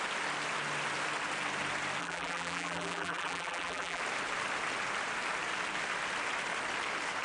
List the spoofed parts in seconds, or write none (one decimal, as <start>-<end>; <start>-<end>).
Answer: 2.0-4.0